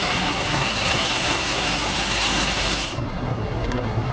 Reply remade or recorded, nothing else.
remade